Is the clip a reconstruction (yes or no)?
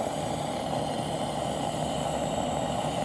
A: no